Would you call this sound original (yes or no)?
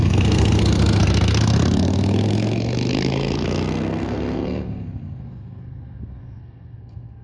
no